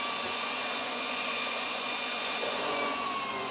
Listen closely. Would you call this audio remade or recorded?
remade